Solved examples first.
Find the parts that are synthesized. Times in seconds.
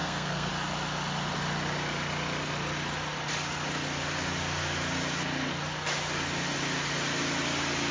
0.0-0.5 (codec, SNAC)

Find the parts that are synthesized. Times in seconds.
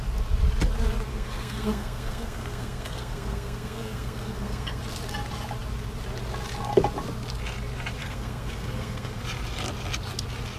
1.1-4.8 (codec, SNAC); 8.0-9.2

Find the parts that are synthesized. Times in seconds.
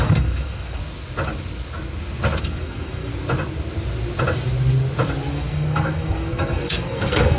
0.0-0.8 (codec, SNAC); 2.4-3.1; 5.3-7.4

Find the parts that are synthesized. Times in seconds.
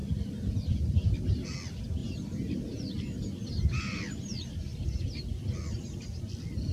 none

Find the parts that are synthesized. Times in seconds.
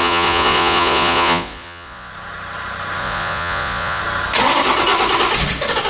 0.0-2.1 (vocoder, Vocos); 3.0-4.0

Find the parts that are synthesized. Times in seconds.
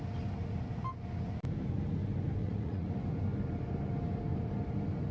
2.4-2.9 (vocoder, Vocos)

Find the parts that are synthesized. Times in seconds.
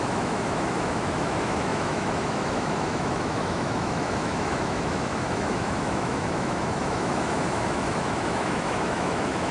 0.0-9.5 (autoencoder, DAC-VAE)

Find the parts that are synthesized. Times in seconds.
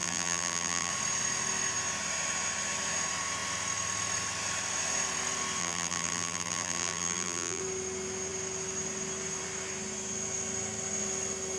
0.0-0.9 (vocoder, BigVGAN v2); 5.6-7.6